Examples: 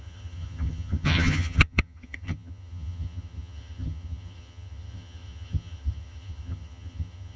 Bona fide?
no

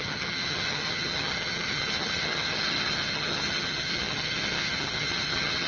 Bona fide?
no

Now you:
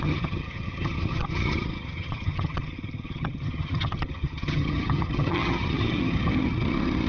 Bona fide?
no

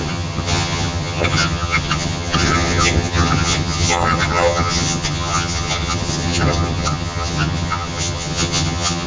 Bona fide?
no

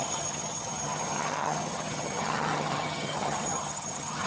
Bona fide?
no